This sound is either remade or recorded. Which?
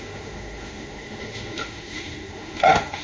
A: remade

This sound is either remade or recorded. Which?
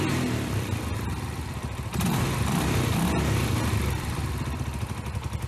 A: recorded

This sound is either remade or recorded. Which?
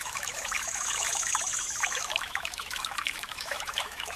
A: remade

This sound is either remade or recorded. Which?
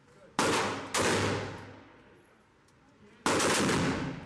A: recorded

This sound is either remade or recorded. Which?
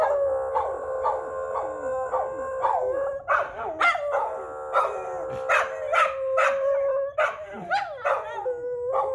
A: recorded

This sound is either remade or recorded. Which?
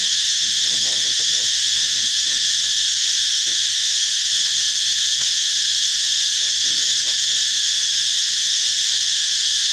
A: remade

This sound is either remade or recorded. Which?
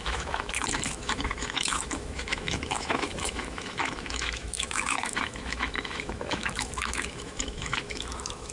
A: remade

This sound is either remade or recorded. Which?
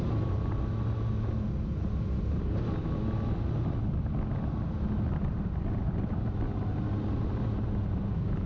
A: recorded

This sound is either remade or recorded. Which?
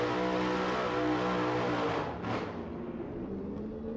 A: recorded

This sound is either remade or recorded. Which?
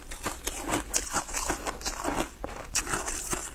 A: recorded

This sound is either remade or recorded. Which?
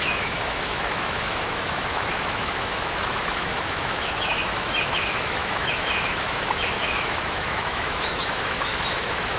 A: remade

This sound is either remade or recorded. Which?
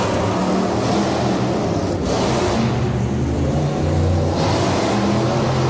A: recorded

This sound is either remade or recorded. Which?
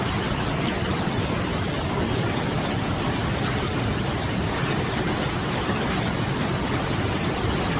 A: recorded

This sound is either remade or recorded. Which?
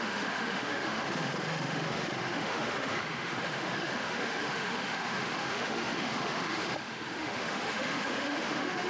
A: remade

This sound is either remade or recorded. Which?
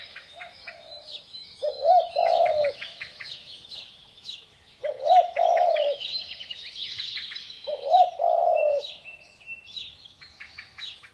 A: remade